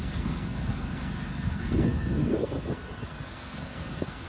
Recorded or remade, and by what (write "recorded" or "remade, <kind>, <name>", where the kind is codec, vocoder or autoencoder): remade, codec, SNAC